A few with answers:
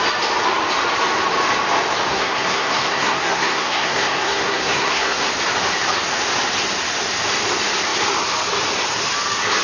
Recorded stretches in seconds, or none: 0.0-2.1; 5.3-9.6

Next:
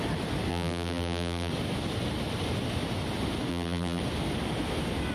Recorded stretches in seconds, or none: 0.0-0.5; 1.5-3.5; 4.0-5.1

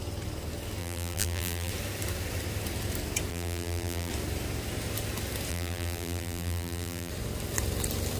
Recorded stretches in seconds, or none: 0.0-0.8; 1.7-3.3; 4.1-5.5; 7.1-8.2

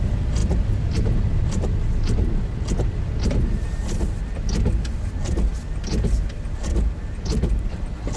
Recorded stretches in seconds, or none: 0.0-8.2

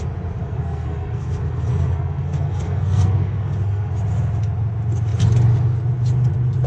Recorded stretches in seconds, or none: 0.0-0.4; 3.9-6.7

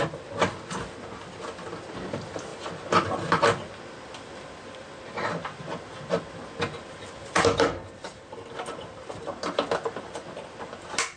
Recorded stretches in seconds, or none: 0.0-11.2